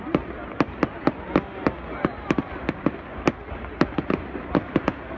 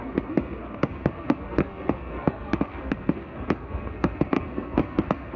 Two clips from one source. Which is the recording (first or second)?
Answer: first